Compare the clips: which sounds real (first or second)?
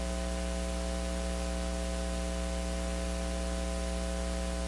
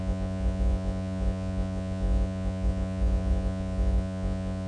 first